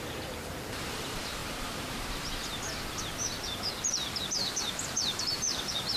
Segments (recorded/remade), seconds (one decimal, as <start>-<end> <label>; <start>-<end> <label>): 0.0-1.4 remade; 1.4-3.8 recorded; 3.8-6.0 remade